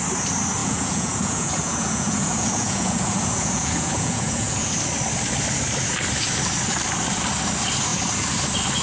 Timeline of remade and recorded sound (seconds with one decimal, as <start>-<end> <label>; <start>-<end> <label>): 0.0-0.6 recorded; 0.6-4.7 remade; 4.7-8.8 recorded